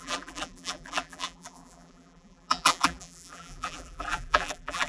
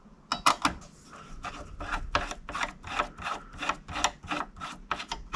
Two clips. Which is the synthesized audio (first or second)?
first